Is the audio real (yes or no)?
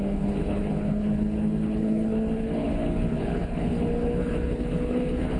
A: no